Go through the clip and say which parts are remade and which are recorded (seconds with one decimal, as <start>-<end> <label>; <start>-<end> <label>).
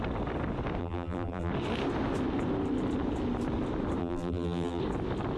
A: 0.0-0.8 recorded; 0.8-1.5 remade; 1.5-4.0 recorded; 4.0-4.8 remade; 4.8-5.4 recorded